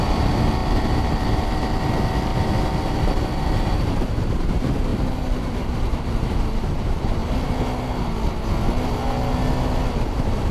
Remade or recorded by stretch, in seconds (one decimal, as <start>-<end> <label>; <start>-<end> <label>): 0.0-7.2 remade; 7.2-10.1 recorded; 10.1-10.5 remade